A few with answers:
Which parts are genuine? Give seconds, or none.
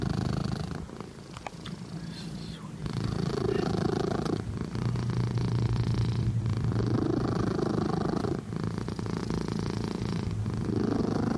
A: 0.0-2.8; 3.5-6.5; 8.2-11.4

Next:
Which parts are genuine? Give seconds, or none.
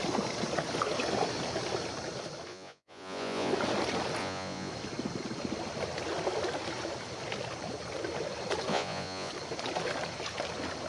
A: 0.0-2.5; 3.5-4.2; 4.7-8.7; 9.3-10.9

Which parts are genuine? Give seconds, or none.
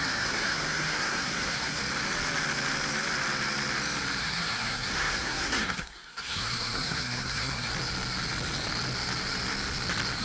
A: 1.8-4.2; 7.7-10.2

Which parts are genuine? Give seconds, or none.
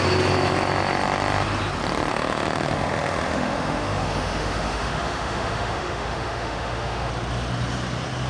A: 0.0-2.1; 7.1-8.3